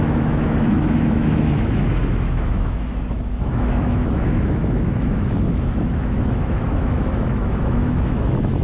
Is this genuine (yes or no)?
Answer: no